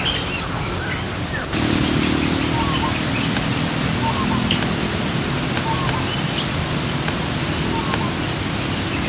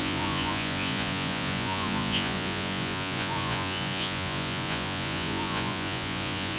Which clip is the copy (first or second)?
second